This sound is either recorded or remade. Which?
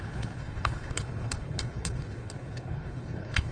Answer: remade